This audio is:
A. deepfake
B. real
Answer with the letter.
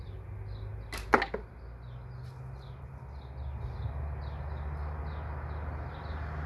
B